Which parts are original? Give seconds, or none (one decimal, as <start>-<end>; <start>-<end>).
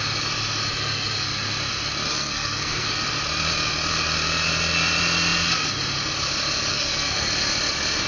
0.0-2.1; 2.9-6.7; 7.3-8.1